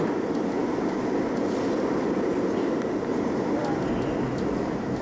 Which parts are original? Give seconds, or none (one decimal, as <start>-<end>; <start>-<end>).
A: 0.0-5.0